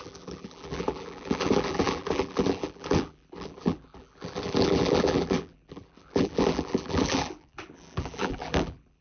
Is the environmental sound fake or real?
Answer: fake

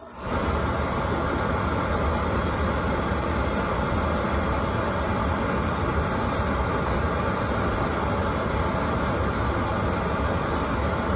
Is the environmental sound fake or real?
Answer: real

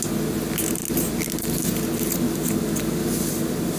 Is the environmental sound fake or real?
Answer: real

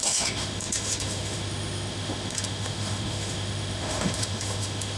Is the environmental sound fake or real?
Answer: fake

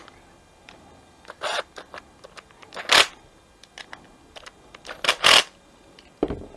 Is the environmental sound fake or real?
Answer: real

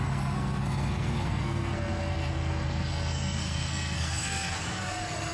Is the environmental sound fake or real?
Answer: fake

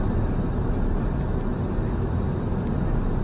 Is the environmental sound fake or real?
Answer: real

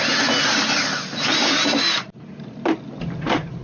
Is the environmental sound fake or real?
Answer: real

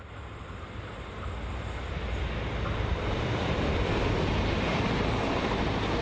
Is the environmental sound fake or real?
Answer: real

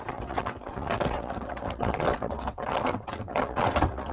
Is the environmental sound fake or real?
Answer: fake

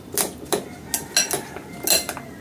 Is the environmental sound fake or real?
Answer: real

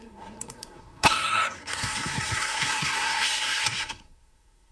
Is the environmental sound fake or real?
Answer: fake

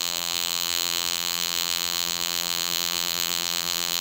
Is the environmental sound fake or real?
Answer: fake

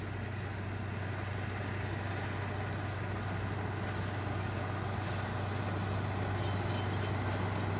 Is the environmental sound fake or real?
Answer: real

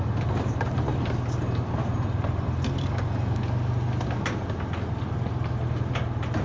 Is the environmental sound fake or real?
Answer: real